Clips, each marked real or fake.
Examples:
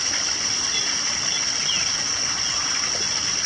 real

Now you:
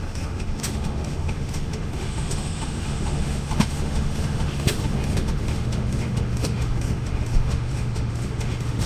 fake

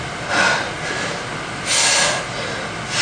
real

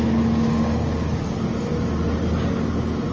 real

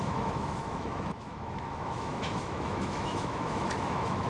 fake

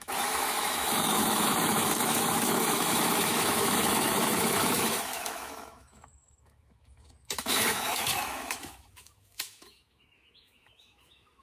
fake